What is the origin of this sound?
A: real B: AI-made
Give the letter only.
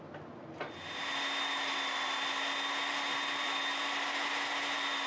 B